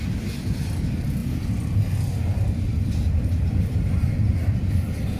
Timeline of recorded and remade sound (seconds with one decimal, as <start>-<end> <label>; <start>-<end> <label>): 0.0-5.2 recorded